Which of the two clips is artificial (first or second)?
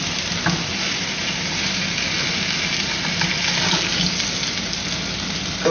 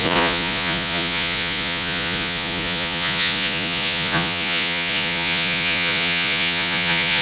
second